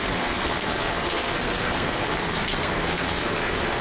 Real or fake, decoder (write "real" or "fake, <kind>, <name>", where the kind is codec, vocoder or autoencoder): fake, codec, SNAC